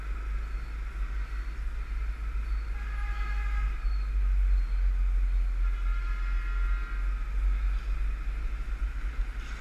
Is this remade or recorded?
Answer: recorded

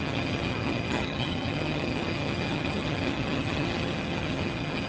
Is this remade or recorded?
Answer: remade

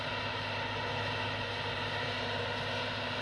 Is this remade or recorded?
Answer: recorded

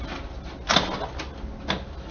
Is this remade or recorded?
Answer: recorded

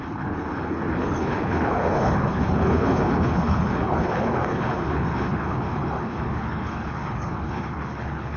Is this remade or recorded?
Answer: remade